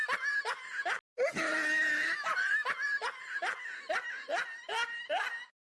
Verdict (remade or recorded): recorded